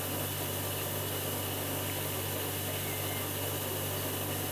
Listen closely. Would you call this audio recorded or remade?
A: recorded